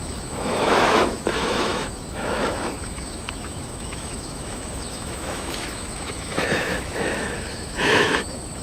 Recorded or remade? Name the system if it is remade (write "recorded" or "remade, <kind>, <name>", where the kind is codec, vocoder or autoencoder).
remade, autoencoder, DAC-VAE